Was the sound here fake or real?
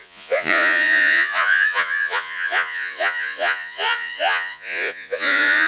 fake